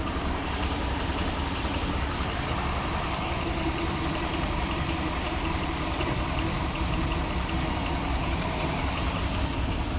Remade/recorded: remade